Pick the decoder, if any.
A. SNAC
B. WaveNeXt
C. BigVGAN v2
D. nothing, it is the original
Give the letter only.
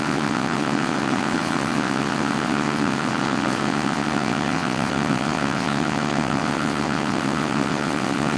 B